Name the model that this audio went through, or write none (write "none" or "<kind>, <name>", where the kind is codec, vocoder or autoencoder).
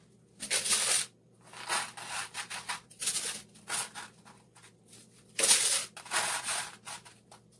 none